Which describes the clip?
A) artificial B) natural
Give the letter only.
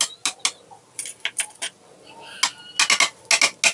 B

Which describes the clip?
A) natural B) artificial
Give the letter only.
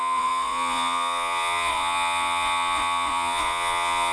B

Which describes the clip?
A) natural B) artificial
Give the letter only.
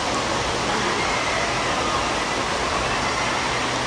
A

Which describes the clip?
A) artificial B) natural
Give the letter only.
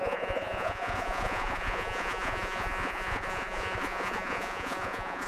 A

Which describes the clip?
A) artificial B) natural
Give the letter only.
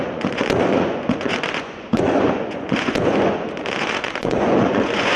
A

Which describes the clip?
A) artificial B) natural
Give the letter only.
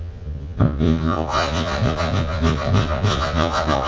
A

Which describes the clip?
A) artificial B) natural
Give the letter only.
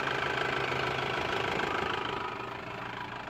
B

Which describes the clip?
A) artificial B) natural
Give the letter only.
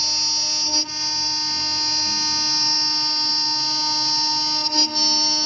B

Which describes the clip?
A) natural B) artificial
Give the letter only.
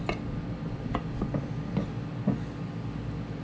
A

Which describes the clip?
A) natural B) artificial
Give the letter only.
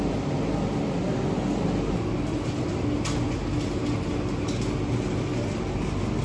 A